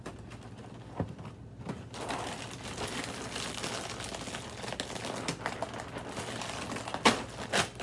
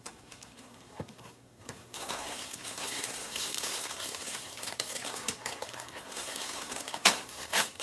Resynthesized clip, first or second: second